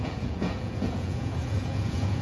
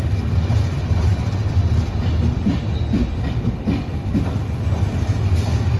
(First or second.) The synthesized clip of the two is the first